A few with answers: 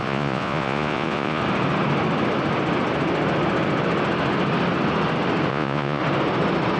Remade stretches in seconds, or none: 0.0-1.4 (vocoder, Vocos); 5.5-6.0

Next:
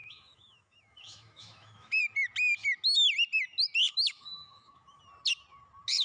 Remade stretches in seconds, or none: 0.0-2.0 (autoencoder, DAC-VAE); 3.8-5.0

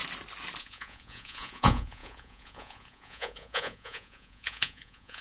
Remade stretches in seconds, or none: 0.6-5.2 (vocoder, Vocos)

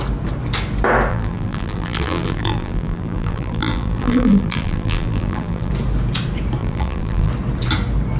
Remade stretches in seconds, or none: 1.1-5.7 (vocoder, BigVGAN v2); 6.6-7.3